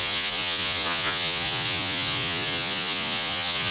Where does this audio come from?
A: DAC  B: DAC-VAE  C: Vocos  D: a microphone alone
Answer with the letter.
C